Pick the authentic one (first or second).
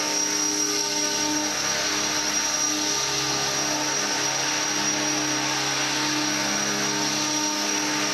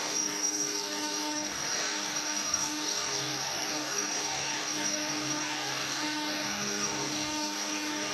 first